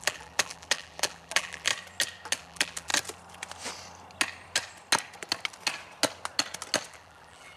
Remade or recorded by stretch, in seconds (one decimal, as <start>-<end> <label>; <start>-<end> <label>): 0.0-1.7 remade; 1.7-2.4 recorded; 2.4-2.9 remade; 2.9-6.9 recorded; 6.9-7.6 remade